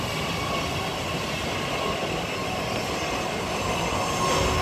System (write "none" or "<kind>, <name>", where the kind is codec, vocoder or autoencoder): none